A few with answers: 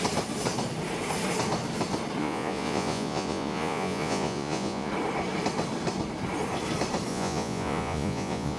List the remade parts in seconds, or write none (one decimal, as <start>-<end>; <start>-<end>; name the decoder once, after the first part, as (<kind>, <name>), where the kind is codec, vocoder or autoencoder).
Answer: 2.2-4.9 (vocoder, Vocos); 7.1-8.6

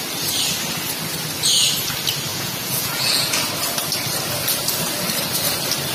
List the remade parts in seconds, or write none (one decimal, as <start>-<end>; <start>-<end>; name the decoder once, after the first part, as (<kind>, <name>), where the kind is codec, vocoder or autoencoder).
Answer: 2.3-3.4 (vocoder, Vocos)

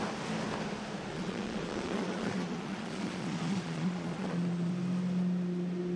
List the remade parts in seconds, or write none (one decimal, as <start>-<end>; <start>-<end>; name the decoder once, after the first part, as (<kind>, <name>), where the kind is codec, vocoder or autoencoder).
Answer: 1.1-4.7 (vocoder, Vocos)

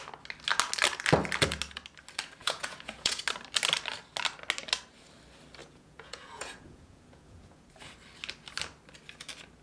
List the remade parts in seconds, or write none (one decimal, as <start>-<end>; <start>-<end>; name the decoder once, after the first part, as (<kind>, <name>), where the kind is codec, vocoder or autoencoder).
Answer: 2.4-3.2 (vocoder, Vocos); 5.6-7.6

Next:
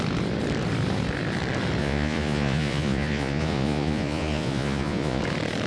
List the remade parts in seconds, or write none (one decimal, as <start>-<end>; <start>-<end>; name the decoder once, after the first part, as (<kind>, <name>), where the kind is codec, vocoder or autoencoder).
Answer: 1.8-5.2 (vocoder, Vocos)